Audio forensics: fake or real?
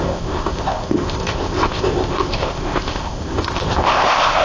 fake